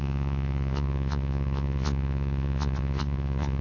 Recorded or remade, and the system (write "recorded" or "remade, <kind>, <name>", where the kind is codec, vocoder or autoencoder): remade, vocoder, Vocos